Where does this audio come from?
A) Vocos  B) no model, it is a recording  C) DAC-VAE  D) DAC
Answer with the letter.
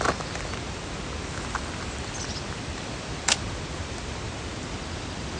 B